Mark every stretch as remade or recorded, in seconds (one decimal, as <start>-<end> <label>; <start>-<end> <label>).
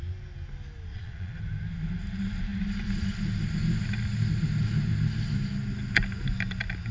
0.0-0.9 recorded; 0.9-1.4 remade; 1.4-6.9 recorded